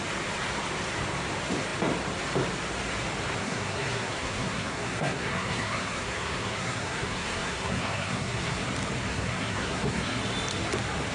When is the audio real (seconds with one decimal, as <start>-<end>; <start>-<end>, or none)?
0.0-3.4; 8.6-9.1; 10.2-11.1